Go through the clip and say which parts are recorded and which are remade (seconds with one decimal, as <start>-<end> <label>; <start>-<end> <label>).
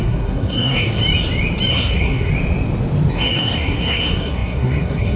0.0-1.0 remade; 1.0-1.7 recorded; 1.7-2.3 remade; 2.3-3.1 recorded; 3.1-5.2 remade